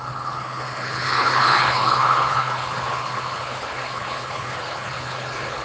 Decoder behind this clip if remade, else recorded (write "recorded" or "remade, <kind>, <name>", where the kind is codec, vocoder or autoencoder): remade, codec, HILCodec